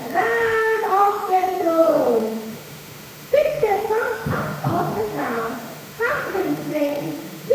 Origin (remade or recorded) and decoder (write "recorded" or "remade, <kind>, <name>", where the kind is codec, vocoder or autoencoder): remade, autoencoder, DAC-VAE